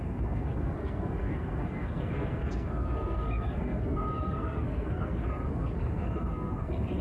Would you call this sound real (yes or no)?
no